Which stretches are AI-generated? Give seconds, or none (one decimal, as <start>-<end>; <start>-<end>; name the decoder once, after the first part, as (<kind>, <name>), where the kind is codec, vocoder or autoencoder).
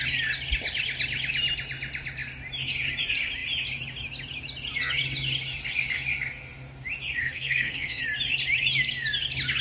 7.2-8.0 (codec, SNAC)